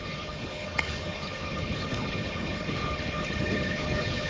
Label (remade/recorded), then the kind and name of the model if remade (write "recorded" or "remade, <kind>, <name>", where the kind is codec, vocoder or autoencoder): remade, codec, HILCodec